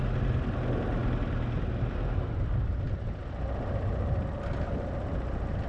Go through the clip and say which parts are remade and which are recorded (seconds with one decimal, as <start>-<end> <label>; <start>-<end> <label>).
0.0-5.7 recorded